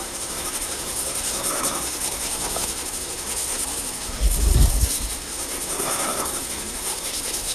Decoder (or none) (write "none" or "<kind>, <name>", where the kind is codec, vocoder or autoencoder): codec, SNAC